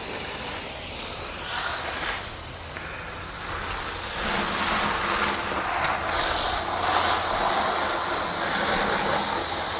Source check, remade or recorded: recorded